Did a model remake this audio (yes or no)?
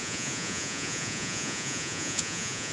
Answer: yes